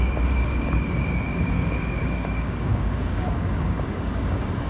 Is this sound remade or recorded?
remade